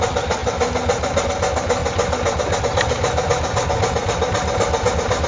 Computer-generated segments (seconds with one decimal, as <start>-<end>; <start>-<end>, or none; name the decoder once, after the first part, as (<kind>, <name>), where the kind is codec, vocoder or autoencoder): none